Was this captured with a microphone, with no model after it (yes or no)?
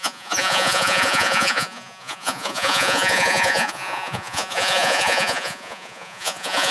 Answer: no